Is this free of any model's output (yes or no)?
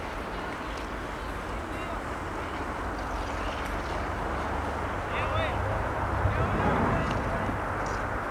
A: yes